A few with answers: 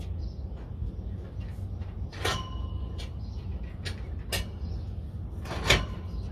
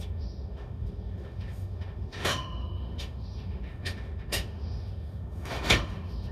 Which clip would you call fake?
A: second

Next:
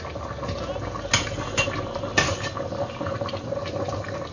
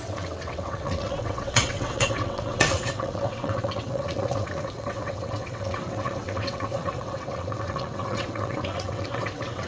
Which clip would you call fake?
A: second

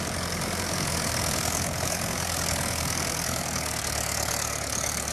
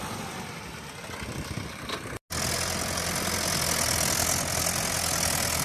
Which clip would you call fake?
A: first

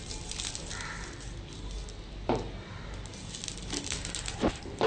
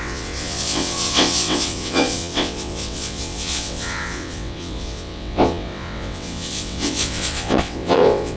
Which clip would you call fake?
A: second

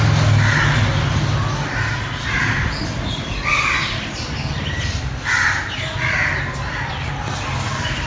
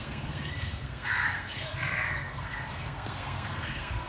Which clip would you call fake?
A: second